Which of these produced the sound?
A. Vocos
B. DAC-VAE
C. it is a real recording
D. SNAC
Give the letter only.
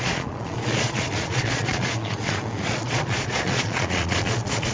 A